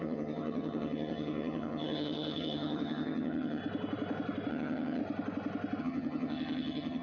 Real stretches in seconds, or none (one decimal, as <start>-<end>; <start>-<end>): 3.6-4.5; 5.0-5.8